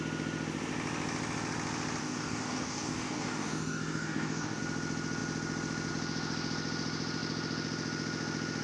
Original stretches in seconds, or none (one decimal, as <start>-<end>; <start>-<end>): 0.0-2.0; 4.6-8.6

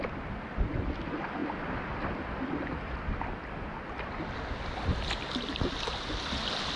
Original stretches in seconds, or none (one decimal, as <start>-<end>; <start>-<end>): 0.0-6.8

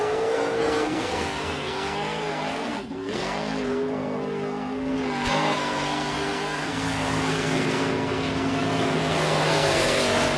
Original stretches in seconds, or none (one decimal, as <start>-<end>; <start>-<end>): none

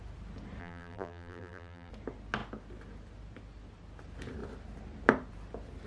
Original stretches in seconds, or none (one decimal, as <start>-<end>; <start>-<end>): 0.0-0.6; 1.9-5.9